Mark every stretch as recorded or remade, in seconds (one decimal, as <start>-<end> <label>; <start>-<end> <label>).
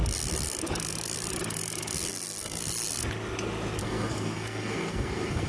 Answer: 0.0-2.1 recorded; 2.1-2.6 remade; 2.6-3.8 recorded; 3.8-5.5 remade